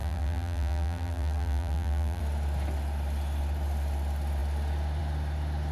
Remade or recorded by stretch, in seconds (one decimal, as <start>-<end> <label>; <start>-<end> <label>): 0.0-2.2 remade; 2.2-5.7 recorded